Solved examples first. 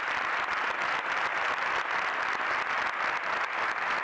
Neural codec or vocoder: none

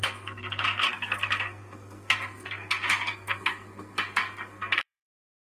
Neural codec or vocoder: codec, SNAC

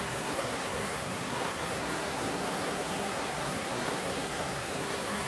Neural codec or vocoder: codec, SNAC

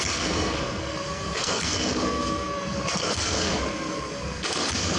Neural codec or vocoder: codec, SNAC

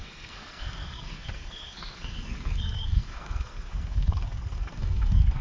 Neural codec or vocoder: codec, SNAC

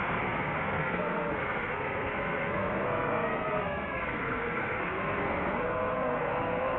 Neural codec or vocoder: codec, SNAC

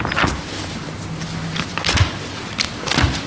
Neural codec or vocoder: none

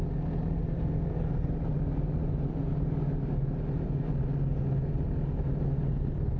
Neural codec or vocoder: none